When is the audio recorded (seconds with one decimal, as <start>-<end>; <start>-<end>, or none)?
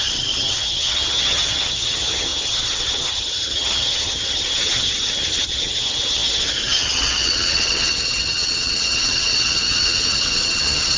none